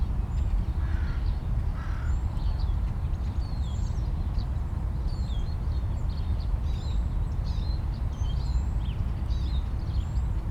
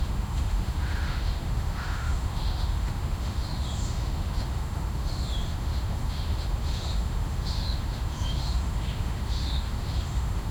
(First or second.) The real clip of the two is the first